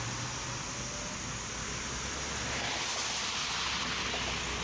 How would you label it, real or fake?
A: real